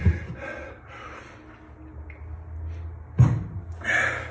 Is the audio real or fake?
real